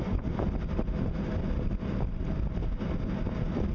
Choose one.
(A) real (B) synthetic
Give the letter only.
A